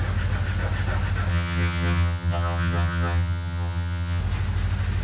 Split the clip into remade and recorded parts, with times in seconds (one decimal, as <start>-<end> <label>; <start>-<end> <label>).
0.0-1.3 recorded; 1.3-4.2 remade; 4.2-5.0 recorded